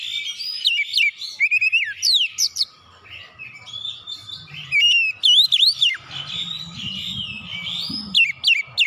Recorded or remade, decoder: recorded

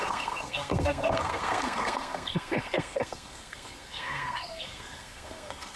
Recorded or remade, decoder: remade, codec, SNAC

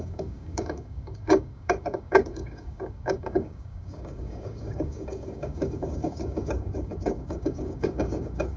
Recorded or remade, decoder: remade, codec, DAC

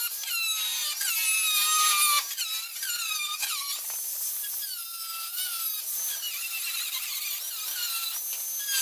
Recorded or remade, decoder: recorded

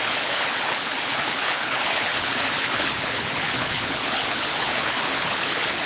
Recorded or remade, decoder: remade, codec, HILCodec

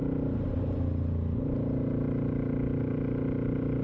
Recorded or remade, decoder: recorded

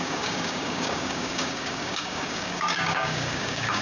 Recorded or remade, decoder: remade, codec, DAC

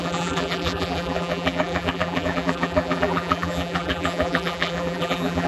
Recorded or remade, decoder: remade, vocoder, BigVGAN v2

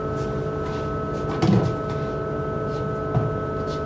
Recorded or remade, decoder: recorded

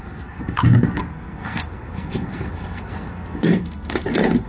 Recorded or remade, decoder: remade, codec, SNAC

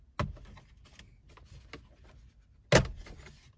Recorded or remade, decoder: recorded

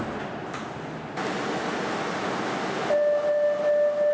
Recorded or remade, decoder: recorded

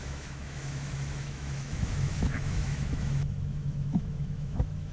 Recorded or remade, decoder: remade, autoencoder, DAC-VAE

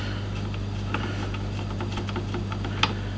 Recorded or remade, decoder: recorded